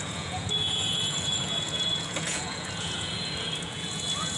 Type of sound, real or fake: fake